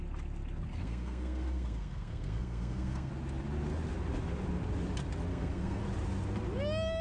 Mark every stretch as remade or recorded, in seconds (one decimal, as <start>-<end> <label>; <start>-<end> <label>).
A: 0.0-0.8 recorded; 0.8-3.1 remade; 3.1-5.3 recorded; 5.3-5.8 remade; 5.8-7.0 recorded